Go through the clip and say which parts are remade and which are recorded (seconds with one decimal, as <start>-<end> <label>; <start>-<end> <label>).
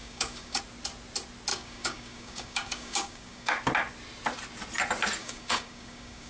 0.0-0.6 remade; 0.6-1.5 recorded; 1.5-3.5 remade; 3.5-5.2 recorded; 5.2-6.3 remade